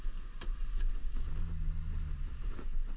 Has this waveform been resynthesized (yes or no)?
no